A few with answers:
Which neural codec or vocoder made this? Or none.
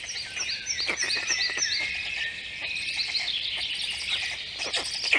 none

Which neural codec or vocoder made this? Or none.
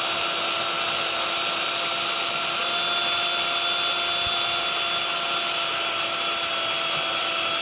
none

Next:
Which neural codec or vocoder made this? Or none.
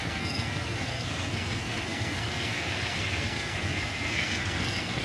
codec, SNAC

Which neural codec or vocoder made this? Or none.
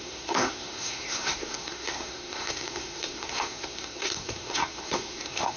codec, SNAC